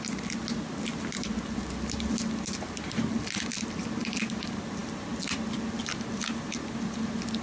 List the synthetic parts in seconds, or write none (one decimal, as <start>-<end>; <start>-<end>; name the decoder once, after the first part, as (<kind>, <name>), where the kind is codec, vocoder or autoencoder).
none